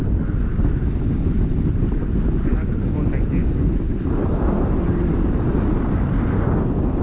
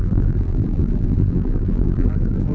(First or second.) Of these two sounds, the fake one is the second